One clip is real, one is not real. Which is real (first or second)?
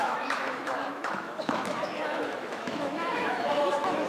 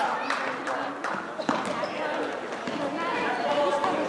second